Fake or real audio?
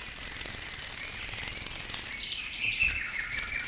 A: real